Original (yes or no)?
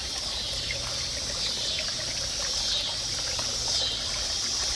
yes